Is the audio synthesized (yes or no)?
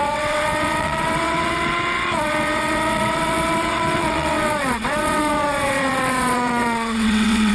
yes